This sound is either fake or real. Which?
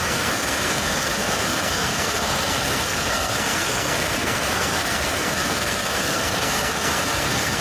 fake